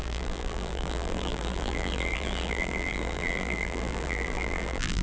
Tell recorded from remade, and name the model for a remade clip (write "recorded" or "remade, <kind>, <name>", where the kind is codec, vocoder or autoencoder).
remade, vocoder, BigVGAN v2